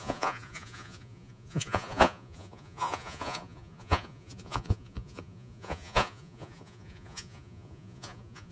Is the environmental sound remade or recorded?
remade